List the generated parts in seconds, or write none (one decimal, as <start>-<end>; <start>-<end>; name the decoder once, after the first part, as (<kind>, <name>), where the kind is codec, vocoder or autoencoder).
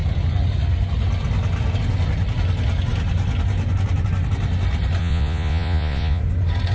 5.0-6.2 (vocoder, Vocos)